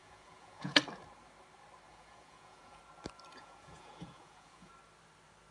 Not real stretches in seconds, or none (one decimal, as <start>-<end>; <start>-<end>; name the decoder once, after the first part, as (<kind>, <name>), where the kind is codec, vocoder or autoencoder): 0.0-0.8 (vocoder, Vocos); 1.9-2.8; 3.3-4.7